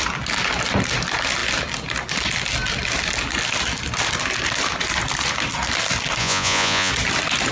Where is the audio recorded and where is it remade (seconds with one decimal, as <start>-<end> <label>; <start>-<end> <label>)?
0.0-6.2 recorded; 6.2-6.9 remade; 6.9-7.5 recorded